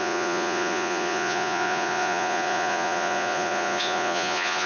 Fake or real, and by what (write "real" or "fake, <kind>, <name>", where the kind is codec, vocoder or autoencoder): fake, vocoder, Vocos